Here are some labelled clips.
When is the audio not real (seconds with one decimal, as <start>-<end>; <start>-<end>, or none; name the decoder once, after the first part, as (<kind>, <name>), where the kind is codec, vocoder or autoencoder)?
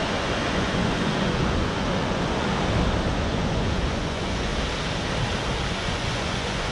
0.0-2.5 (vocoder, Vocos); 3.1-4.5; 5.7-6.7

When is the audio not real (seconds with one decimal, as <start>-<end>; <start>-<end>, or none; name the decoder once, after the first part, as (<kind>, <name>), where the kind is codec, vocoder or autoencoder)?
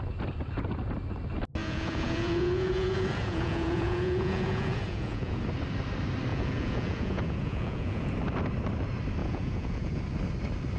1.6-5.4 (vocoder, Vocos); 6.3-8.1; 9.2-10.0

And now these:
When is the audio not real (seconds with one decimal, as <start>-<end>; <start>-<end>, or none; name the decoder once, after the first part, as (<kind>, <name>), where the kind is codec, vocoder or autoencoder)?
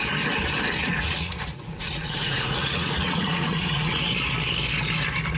0.8-4.0 (vocoder, Vocos)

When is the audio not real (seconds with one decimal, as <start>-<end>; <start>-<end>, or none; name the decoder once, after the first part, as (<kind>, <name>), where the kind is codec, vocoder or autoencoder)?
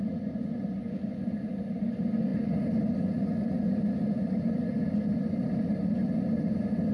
none